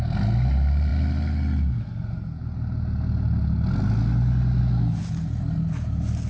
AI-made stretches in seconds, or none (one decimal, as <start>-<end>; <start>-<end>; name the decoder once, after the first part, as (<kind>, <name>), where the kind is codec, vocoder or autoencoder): none